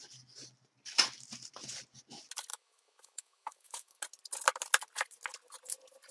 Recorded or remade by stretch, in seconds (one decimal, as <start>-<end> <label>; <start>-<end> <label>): 0.0-2.5 recorded; 2.5-4.0 remade; 4.0-6.1 recorded